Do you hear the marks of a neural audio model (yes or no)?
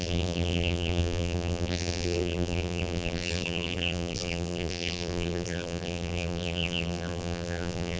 yes